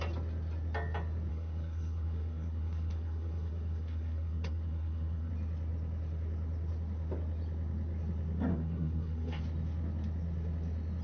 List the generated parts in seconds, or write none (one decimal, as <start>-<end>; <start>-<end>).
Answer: 1.3-5.3; 8.5-9.4